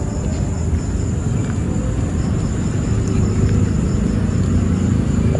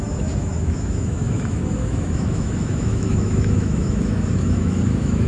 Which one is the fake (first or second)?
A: second